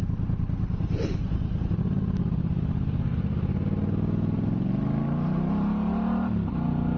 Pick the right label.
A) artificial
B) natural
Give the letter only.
B